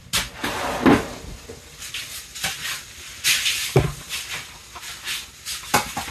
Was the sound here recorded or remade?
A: recorded